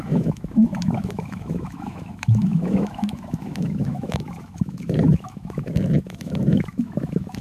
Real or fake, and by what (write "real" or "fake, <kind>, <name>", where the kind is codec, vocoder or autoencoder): fake, autoencoder, DAC-VAE